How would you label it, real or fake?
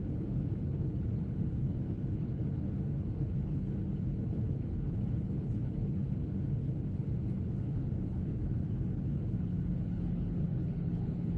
fake